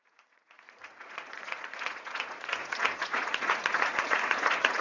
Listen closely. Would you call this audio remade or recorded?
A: remade